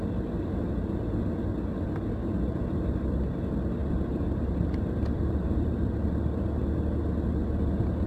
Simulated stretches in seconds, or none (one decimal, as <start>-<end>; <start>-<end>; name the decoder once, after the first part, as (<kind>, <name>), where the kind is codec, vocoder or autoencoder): 3.8-5.8 (vocoder, BigVGAN v2)